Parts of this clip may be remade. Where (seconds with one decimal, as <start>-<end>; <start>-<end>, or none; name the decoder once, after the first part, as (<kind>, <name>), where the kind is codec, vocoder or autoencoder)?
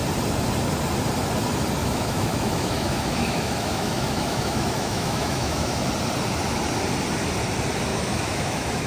1.8-5.9 (autoencoder, DAC-VAE); 7.9-8.9